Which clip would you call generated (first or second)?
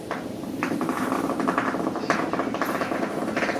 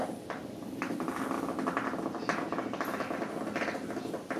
first